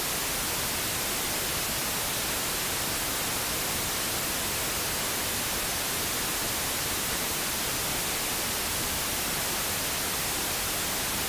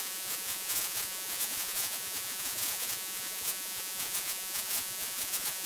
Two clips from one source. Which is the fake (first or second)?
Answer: second